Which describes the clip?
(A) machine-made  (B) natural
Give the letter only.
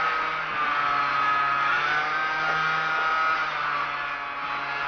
B